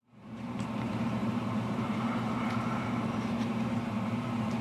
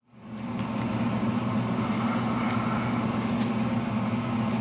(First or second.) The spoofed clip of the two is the first